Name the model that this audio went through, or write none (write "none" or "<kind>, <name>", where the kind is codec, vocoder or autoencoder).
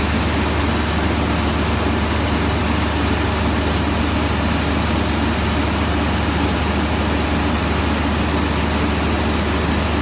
none